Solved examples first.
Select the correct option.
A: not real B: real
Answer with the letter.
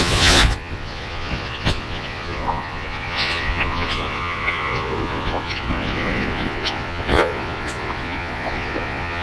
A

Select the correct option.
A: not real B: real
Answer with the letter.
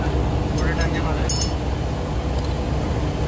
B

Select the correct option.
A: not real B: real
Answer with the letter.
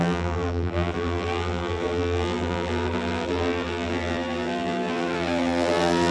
A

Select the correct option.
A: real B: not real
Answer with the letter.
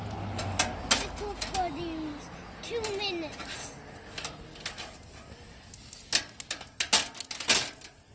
A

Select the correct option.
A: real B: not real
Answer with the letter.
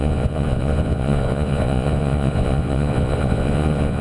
B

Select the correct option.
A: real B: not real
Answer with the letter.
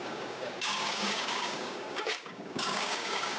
B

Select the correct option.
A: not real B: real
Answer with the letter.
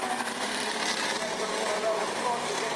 B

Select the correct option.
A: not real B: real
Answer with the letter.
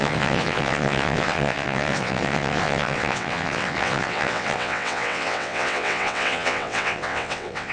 A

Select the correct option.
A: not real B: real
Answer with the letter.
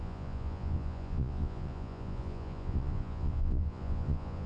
A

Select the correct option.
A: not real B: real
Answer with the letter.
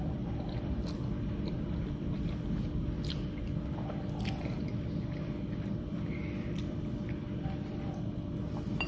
B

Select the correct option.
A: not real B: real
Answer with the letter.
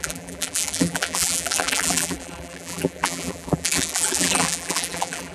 A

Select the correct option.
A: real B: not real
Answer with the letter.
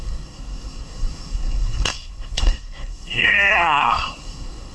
B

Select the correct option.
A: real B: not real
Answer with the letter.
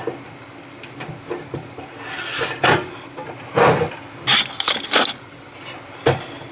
A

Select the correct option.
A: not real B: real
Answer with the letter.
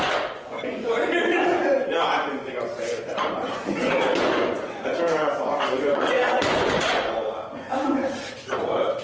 A